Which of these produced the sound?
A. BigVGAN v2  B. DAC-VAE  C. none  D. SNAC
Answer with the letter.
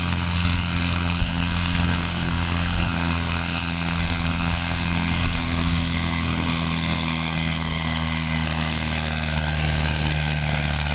D